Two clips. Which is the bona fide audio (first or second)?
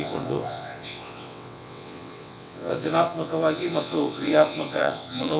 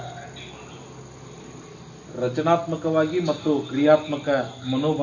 second